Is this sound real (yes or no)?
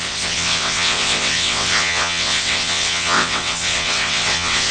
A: no